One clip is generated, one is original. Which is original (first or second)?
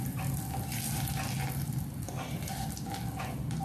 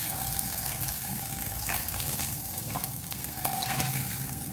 first